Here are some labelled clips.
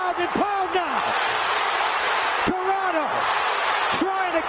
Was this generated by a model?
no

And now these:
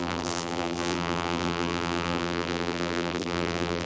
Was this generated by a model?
yes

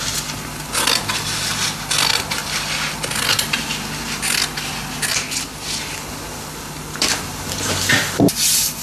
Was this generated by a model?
no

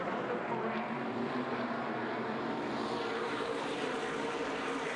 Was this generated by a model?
yes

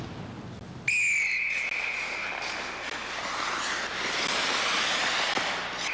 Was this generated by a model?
no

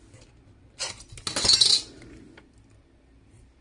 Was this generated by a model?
no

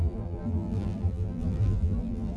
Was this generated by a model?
yes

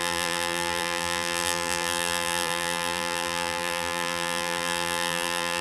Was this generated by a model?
yes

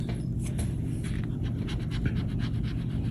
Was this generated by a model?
yes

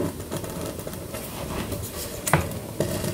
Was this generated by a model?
no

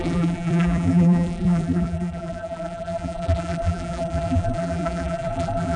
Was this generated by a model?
yes